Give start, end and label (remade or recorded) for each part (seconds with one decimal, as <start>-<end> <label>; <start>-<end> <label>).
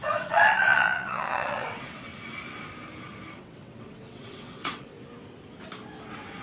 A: 0.0-2.1 remade; 2.1-3.4 recorded; 3.4-4.9 remade; 4.9-6.0 recorded; 6.0-6.4 remade